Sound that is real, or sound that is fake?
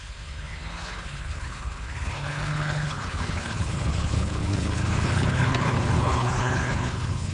fake